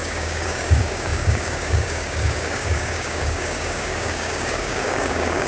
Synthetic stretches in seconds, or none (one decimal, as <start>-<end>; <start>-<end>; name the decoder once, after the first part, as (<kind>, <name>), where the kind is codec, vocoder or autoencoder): 0.0-5.5 (codec, DAC)